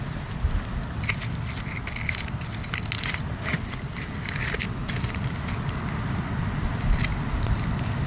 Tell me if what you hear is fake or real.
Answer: real